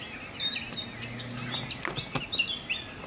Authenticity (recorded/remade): recorded